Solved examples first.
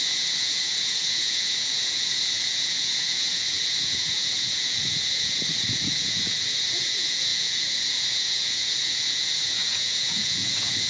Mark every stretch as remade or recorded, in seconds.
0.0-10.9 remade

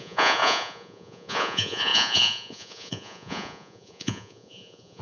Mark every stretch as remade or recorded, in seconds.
0.0-5.0 remade

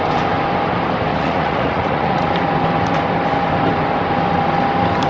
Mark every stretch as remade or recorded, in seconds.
0.0-1.1 recorded; 1.1-2.3 remade; 2.3-5.1 recorded

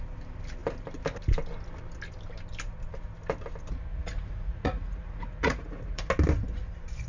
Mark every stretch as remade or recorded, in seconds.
0.0-3.9 recorded; 3.9-6.1 remade; 6.1-7.1 recorded

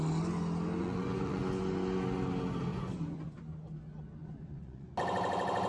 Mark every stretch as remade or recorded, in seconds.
0.0-0.8 recorded; 0.8-1.4 remade; 1.4-2.7 recorded; 2.7-3.4 remade; 3.4-4.2 recorded; 4.2-4.9 remade; 4.9-5.7 recorded

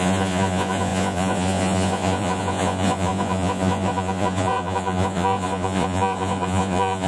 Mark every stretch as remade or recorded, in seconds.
0.0-7.1 remade